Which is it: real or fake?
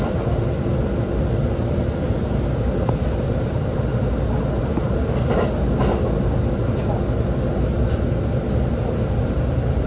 real